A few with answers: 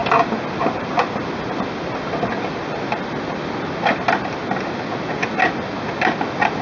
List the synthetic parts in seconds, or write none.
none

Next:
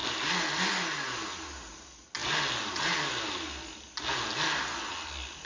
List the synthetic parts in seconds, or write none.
none

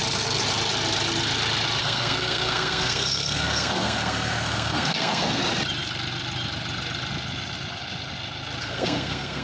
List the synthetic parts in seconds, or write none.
1.8-5.4 (codec, SNAC); 8.6-9.4

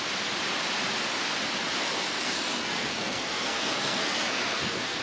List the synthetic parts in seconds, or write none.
1.8-5.0 (codec, SNAC)